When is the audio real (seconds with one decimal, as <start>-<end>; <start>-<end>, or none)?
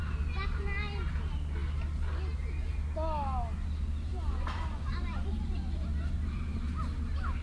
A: 0.0-4.1; 4.9-5.9; 6.8-7.4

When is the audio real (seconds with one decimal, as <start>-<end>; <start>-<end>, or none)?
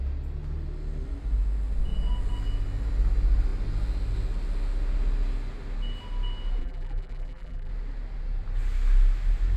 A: 0.0-6.6; 7.7-9.6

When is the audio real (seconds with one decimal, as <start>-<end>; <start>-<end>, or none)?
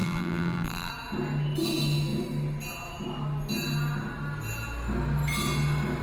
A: 0.9-6.0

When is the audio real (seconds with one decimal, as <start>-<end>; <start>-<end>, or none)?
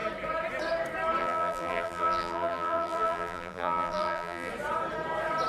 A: 0.0-1.2; 4.5-5.5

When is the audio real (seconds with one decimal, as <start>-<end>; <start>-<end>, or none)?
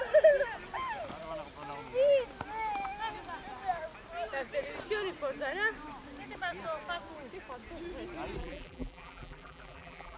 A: 0.0-8.4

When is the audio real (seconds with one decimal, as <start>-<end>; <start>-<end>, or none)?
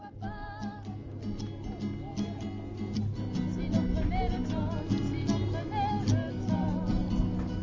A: 0.0-7.6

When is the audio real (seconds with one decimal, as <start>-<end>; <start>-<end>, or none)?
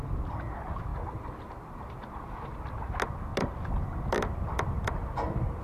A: 0.0-0.9; 1.9-5.6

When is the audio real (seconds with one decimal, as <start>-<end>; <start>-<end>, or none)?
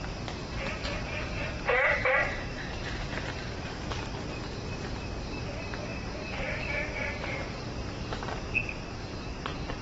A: 0.0-0.4; 4.0-5.9; 7.6-8.6